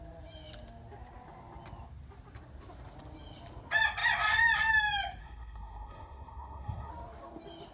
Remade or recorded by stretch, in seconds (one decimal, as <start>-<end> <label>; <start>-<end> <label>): 0.0-5.2 recorded; 5.2-6.9 remade; 6.9-7.7 recorded